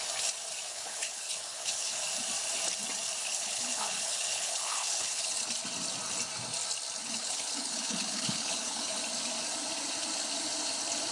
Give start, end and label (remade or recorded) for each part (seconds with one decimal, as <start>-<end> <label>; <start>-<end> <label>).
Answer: 0.0-0.7 recorded; 0.7-2.0 remade; 2.0-3.2 recorded; 3.2-5.3 remade; 5.3-7.0 recorded; 7.0-9.0 remade; 9.0-11.1 recorded